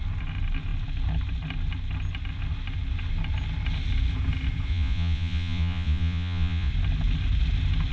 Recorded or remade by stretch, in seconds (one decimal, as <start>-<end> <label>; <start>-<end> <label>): 0.0-4.7 recorded; 4.7-6.7 remade; 6.7-7.9 recorded